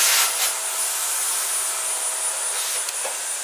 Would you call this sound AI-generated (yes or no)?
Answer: no